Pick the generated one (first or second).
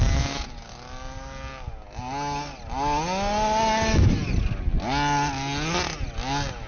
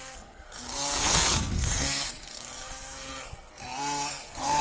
second